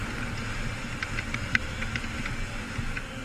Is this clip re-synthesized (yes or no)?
no